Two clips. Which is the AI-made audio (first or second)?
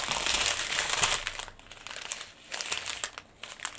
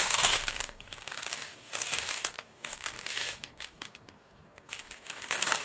second